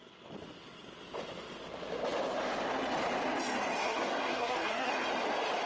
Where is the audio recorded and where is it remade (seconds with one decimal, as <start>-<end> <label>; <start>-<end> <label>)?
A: 0.0-3.8 recorded; 3.8-4.9 remade; 4.9-5.7 recorded